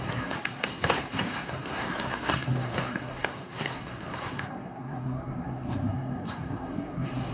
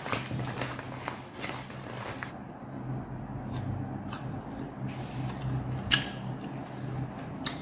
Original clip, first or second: second